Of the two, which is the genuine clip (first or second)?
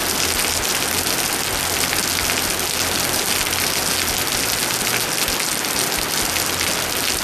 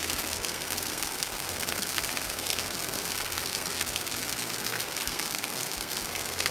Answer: first